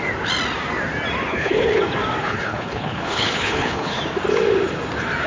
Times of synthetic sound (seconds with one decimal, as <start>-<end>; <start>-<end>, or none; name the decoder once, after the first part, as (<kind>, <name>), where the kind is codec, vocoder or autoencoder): 1.3-1.8 (codec, HILCodec); 2.2-4.0